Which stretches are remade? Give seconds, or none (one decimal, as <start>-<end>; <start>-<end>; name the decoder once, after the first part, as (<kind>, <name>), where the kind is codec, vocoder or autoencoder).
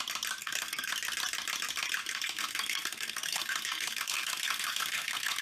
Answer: 0.4-0.9 (codec, SNAC); 2.0-5.4